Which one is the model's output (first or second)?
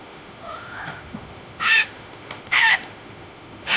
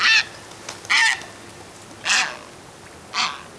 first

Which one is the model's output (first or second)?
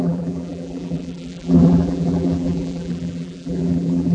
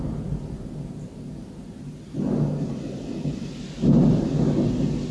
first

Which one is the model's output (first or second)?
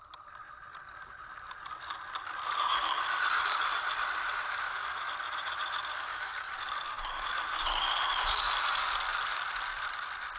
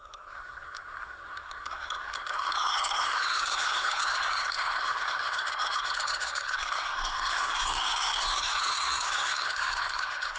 second